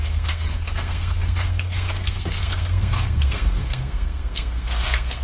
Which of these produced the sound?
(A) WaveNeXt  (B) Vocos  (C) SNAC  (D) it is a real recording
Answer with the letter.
C